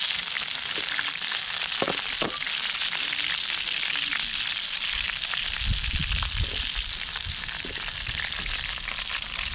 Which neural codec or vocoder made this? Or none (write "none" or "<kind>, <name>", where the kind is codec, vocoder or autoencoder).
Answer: none